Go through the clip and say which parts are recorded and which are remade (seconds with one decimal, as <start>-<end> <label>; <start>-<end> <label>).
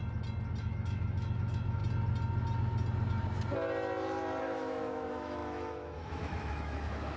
0.0-0.6 recorded; 0.6-1.8 remade; 1.8-4.4 recorded; 4.4-7.2 remade